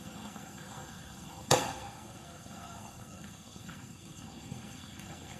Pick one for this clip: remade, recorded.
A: remade